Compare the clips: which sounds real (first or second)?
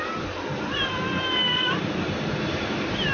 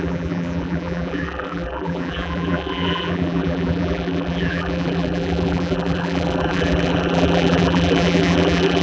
first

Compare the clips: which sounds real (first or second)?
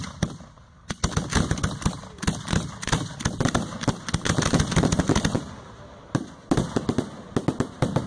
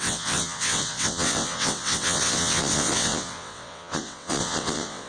first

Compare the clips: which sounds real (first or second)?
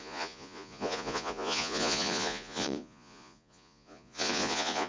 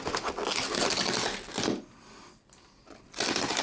second